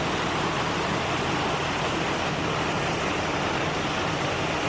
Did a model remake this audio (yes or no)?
no